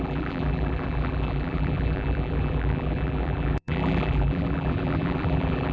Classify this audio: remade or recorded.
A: remade